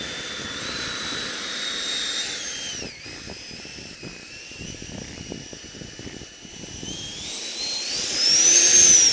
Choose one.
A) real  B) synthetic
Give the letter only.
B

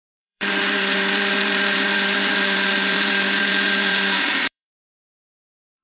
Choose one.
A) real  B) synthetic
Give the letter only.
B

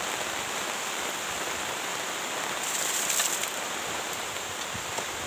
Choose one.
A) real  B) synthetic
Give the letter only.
B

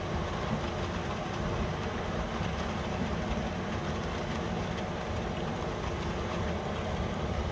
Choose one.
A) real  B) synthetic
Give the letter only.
B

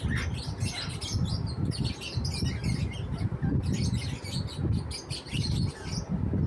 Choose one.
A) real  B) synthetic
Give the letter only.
A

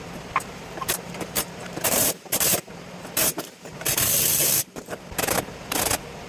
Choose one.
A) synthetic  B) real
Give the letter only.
A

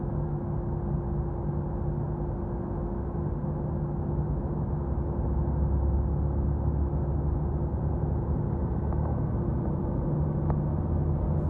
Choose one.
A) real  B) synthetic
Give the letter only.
A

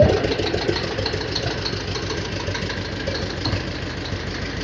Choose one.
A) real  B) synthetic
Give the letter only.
A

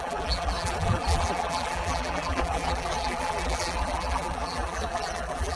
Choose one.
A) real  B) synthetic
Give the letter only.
B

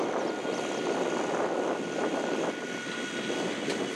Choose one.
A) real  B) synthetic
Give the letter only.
A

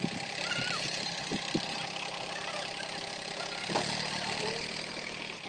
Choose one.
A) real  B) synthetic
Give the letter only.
B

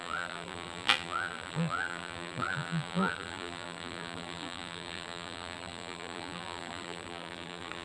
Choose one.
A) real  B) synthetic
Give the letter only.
B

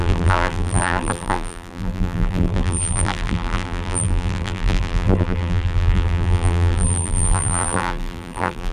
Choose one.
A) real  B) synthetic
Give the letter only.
B